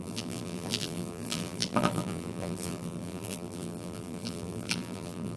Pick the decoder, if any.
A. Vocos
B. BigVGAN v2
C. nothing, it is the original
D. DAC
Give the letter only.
B